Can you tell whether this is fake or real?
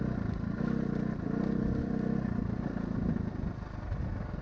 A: real